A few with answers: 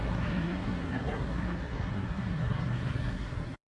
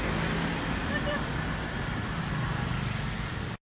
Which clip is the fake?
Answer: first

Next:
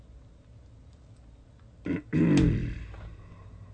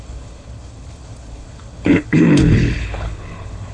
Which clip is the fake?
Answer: second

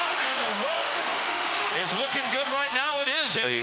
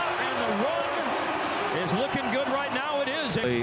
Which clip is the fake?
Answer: first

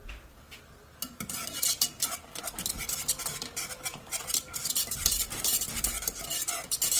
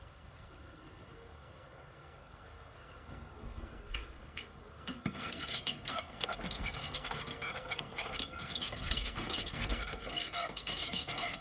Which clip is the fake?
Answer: second